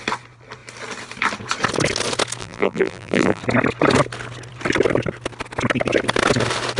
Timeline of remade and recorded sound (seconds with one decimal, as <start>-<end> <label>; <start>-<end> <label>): 0.0-2.4 recorded; 2.4-3.4 remade; 3.4-6.8 recorded

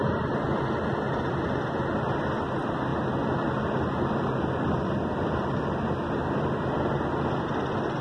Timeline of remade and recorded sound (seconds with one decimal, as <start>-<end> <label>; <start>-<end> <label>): 0.0-8.0 recorded

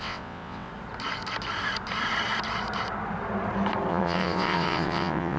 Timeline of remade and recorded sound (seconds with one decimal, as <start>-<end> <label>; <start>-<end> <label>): 0.0-0.7 remade; 0.7-3.9 recorded; 3.9-5.4 remade

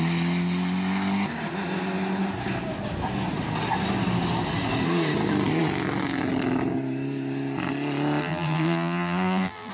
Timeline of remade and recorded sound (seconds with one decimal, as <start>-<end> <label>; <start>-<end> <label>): 0.0-8.2 recorded; 8.2-9.7 remade